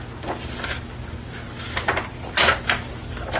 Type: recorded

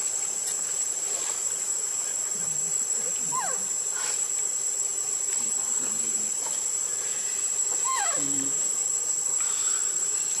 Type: remade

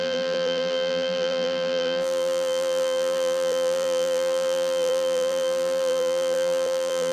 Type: remade